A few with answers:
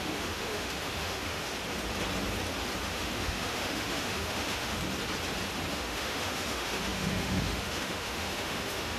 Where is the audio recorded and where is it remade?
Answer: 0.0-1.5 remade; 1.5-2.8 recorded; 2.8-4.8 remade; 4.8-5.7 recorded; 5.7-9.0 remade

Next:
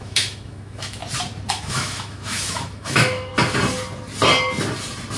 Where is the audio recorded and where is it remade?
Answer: 0.0-1.0 remade; 1.0-1.5 recorded; 1.5-3.3 remade; 3.3-5.2 recorded

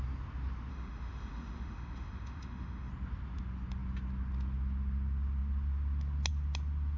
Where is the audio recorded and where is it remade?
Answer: 0.0-0.7 recorded; 0.7-2.9 remade; 2.9-7.0 recorded